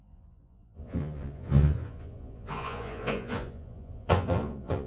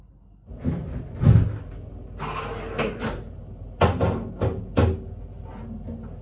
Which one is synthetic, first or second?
first